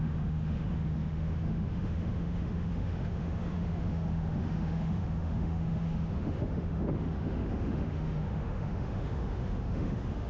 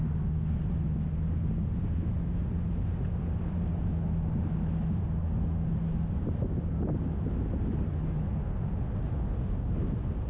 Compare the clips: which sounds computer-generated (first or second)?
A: first